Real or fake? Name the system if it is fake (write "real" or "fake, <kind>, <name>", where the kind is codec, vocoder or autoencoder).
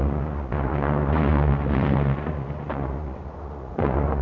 fake, vocoder, Vocos